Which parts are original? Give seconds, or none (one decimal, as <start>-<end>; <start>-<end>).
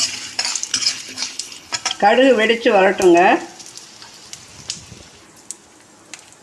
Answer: 0.0-0.7; 1.7-6.4